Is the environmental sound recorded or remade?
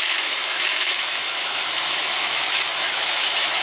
remade